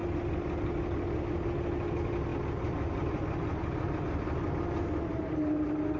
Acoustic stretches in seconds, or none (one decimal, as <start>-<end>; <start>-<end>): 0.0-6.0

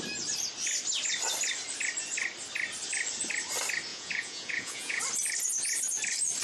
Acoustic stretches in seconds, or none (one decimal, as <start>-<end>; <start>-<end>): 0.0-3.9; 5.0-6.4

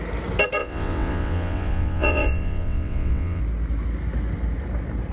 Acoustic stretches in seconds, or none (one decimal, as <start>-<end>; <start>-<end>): 0.0-0.6; 3.4-5.1

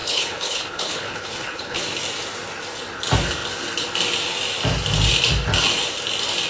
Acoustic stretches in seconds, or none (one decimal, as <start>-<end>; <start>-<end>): 1.8-6.5

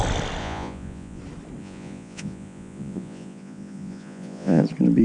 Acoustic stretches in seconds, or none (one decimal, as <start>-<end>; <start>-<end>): 0.0-0.4; 1.2-1.6; 4.6-5.0

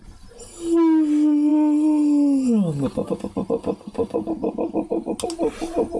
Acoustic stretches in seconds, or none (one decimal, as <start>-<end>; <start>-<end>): 0.0-6.0